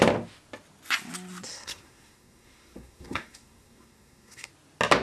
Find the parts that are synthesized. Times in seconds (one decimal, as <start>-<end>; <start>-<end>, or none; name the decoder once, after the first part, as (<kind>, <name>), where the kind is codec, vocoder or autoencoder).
1.5-4.5 (codec, SNAC)